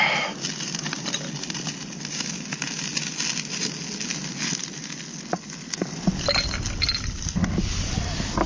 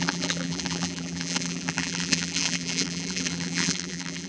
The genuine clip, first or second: first